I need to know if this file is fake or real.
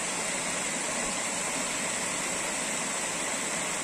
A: real